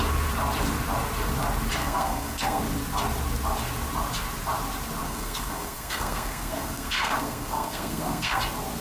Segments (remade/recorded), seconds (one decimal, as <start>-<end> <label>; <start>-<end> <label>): 0.0-1.8 recorded; 1.8-2.6 remade; 2.6-5.0 recorded; 5.0-8.4 remade; 8.4-8.8 recorded